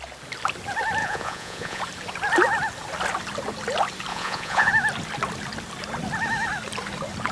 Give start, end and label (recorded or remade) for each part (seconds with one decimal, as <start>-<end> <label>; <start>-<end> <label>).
0.0-1.0 recorded; 1.0-1.8 remade; 1.8-4.1 recorded; 4.1-4.7 remade; 4.7-7.3 recorded